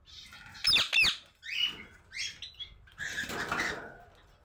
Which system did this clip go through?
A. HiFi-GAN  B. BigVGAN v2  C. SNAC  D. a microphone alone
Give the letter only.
D